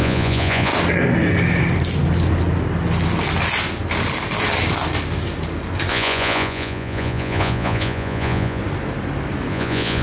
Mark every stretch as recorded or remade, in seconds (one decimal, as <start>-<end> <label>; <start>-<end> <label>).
0.0-0.7 remade; 0.7-5.9 recorded; 5.9-8.6 remade; 8.6-9.5 recorded; 9.5-10.0 remade